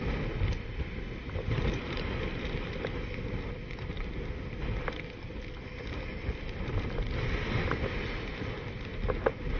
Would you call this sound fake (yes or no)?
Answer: no